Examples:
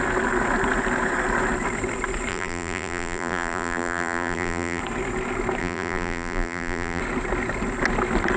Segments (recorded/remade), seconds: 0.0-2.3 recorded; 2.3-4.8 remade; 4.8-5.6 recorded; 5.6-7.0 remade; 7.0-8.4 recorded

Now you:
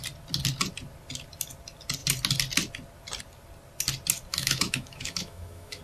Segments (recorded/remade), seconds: 0.0-4.3 recorded; 4.3-5.8 remade

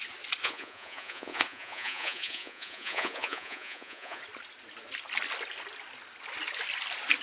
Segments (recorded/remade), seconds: 0.0-0.4 recorded; 0.4-4.2 remade; 4.2-7.2 recorded

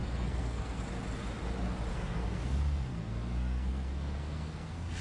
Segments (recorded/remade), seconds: 0.0-0.8 remade; 0.8-1.9 recorded; 1.9-5.0 remade

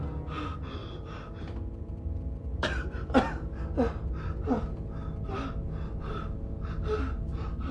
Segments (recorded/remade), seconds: 0.0-0.8 recorded; 0.8-3.0 remade; 3.0-7.7 recorded

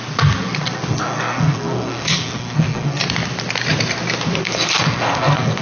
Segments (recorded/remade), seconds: 0.0-0.9 recorded; 0.9-3.0 remade; 3.0-4.4 recorded; 4.4-5.6 remade

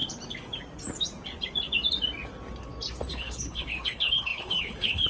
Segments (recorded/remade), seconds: 0.0-3.1 recorded; 3.1-5.1 remade